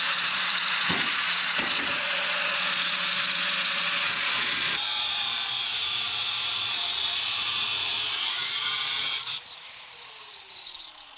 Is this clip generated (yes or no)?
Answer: yes